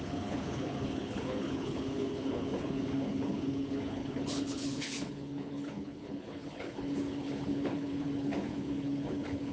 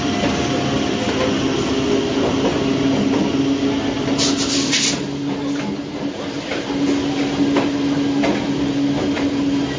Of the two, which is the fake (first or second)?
first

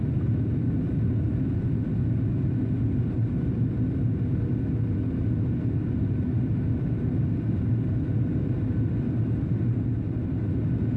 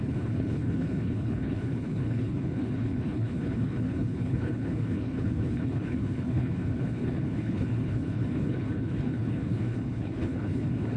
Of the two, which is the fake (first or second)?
second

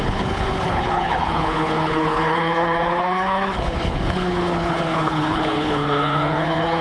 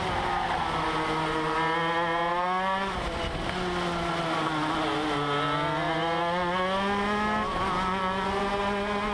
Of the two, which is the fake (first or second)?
first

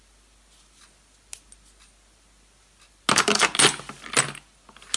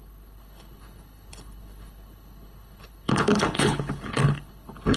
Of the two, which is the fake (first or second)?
second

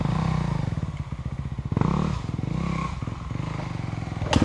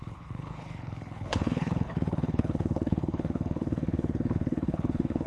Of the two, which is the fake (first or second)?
second